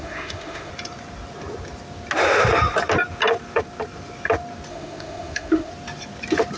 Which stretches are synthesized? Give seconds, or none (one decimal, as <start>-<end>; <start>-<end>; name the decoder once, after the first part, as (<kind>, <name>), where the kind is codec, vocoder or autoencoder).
0.0-0.7 (autoencoder, DAC-VAE); 4.7-5.7